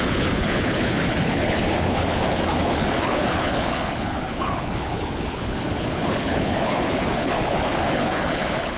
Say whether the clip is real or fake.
fake